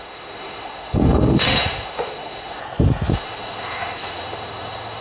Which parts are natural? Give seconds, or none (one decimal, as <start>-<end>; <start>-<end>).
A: 2.6-3.1